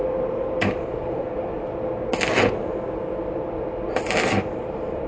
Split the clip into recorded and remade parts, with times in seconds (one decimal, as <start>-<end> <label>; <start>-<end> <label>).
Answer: 0.0-1.8 remade; 1.8-4.6 recorded; 4.6-5.1 remade